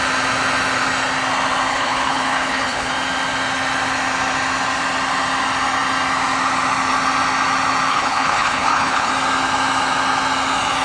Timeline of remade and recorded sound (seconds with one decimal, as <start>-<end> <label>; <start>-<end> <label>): 0.0-1.7 recorded; 1.7-2.9 remade; 2.9-7.9 recorded; 7.9-9.1 remade; 9.1-10.8 recorded